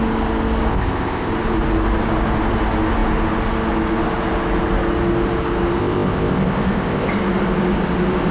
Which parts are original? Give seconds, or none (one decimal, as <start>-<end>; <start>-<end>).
0.0-0.7; 1.3-5.8; 7.1-8.3